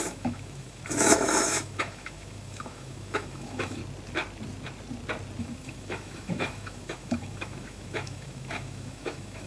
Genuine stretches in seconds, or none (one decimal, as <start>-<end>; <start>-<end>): 3.8-5.4